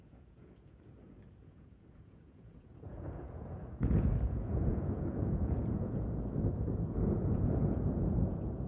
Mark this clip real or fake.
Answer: fake